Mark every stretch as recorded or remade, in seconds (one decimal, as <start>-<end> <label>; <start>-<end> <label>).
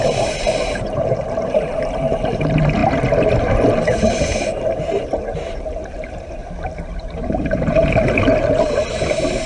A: 0.0-2.8 remade; 2.8-3.4 recorded; 3.4-6.4 remade; 6.4-6.9 recorded; 6.9-9.5 remade